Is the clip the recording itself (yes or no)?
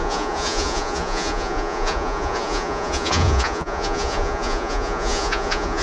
no